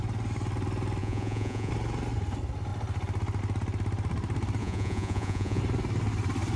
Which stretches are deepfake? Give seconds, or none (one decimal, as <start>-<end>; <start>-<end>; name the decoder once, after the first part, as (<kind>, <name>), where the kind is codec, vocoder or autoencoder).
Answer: 1.0-1.7 (vocoder, Vocos); 4.6-5.6